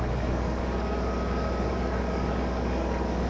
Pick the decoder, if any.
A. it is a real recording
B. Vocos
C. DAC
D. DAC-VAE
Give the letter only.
C